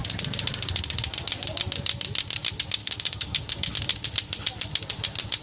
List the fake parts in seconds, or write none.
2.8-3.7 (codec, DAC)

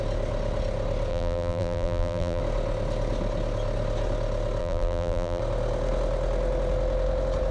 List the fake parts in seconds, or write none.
1.1-2.4 (vocoder, BigVGAN v2); 4.6-5.4

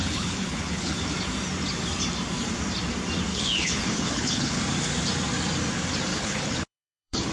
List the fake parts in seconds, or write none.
0.0-1.0 (codec, HILCodec); 3.3-4.6; 6.1-7.3